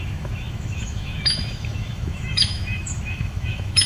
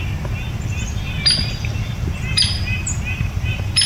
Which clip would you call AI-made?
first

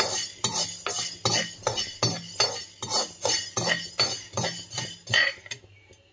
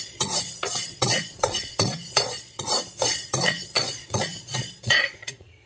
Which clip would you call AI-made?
second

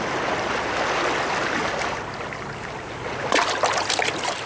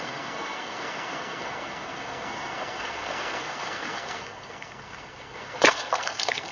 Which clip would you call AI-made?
second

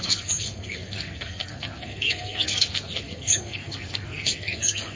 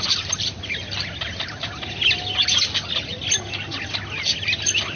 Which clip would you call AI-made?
first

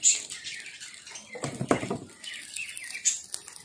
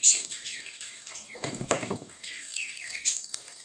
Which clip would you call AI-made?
second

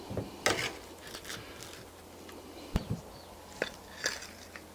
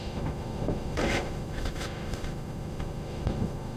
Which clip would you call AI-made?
second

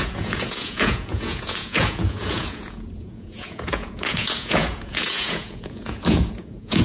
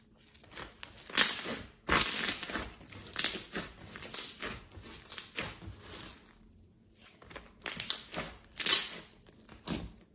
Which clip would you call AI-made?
first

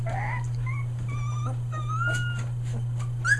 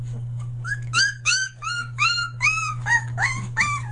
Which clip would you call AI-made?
second